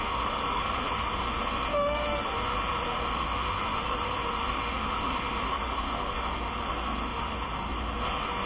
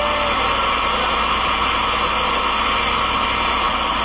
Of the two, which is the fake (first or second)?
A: first